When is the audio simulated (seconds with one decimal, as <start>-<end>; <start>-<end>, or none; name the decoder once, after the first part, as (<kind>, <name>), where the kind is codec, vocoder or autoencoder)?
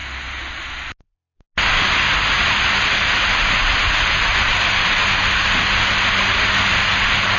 4.3-4.9 (vocoder, BigVGAN v2)